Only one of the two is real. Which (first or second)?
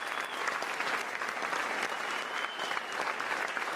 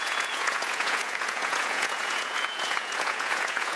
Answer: first